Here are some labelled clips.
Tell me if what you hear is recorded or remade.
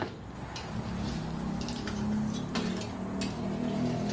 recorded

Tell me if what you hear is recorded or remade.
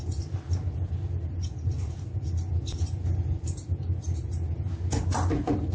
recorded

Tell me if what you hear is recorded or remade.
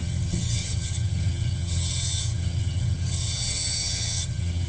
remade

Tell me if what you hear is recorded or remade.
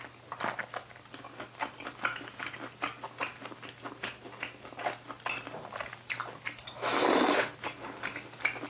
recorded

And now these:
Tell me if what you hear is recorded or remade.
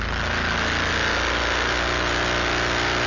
recorded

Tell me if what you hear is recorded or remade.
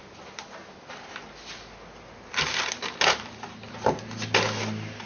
recorded